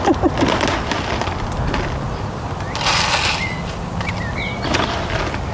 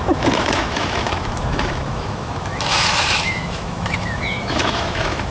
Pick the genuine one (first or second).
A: first